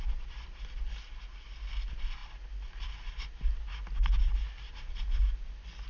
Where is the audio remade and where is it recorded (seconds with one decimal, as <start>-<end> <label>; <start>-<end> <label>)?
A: 0.0-5.9 recorded